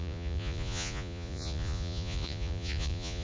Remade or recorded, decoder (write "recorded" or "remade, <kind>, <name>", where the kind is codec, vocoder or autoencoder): remade, vocoder, Vocos